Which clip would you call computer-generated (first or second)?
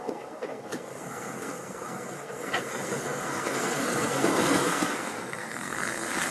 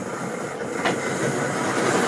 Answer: first